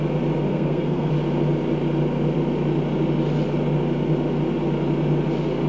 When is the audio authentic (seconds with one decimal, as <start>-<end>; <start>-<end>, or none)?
0.0-0.5; 1.1-5.7